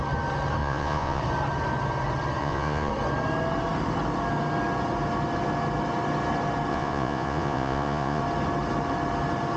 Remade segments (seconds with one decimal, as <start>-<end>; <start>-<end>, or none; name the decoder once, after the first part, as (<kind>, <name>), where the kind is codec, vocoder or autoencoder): 0.6-1.2 (vocoder, Vocos); 2.4-2.9; 6.7-8.2